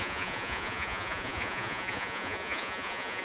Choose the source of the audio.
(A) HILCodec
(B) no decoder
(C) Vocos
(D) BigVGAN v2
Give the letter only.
C